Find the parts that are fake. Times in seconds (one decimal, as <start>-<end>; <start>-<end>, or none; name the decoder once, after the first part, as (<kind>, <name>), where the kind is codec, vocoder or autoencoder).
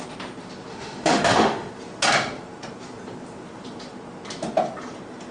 0.7-1.7 (autoencoder, DAC-VAE)